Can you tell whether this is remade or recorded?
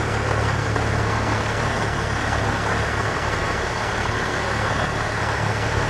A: remade